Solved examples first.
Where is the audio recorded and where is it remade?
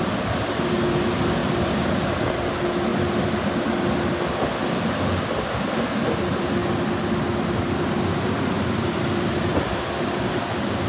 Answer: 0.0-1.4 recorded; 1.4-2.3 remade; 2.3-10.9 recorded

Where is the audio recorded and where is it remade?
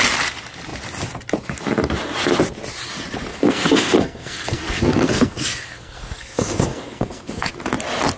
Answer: 0.0-3.3 recorded; 3.3-7.5 remade; 7.5-8.2 recorded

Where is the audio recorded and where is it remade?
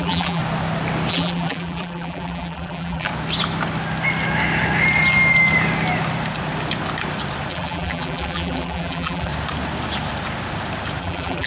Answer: 0.0-0.4 remade; 0.4-1.1 recorded; 1.1-3.1 remade; 3.1-7.5 recorded; 7.5-9.3 remade; 9.3-11.0 recorded; 11.0-11.5 remade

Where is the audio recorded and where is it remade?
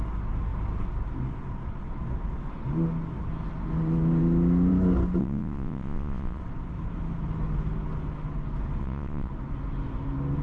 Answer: 0.0-5.2 recorded; 5.2-6.4 remade; 6.4-8.8 recorded; 8.8-9.3 remade; 9.3-10.4 recorded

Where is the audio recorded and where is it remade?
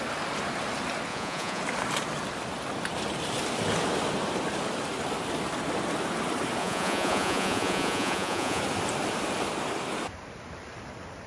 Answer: 0.0-1.1 recorded; 1.1-1.6 remade; 1.6-6.6 recorded; 6.6-8.6 remade; 8.6-11.3 recorded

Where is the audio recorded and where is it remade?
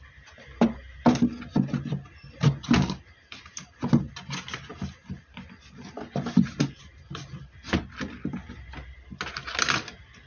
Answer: 0.0-10.3 recorded